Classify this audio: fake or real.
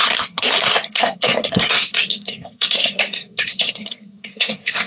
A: fake